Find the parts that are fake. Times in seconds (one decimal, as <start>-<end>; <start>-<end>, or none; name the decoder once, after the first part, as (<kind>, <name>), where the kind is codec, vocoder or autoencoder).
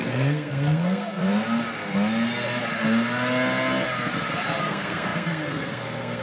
0.0-1.2 (codec, SNAC); 4.6-6.2